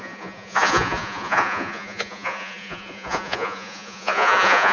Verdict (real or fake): fake